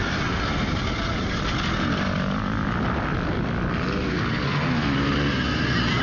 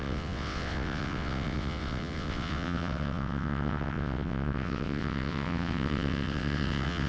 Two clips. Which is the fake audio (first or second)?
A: second